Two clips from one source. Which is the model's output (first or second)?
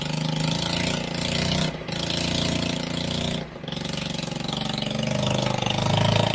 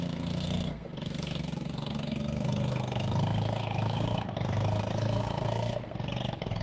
second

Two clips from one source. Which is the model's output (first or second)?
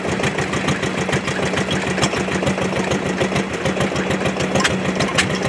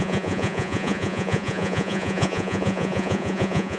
second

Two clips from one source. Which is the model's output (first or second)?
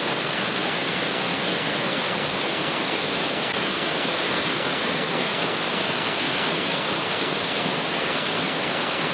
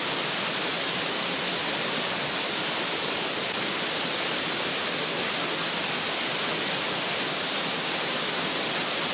first